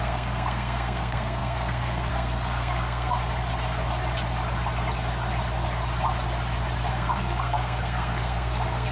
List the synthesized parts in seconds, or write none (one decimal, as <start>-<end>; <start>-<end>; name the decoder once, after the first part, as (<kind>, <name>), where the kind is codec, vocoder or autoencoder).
0.0-3.2 (codec, SNAC); 6.9-8.9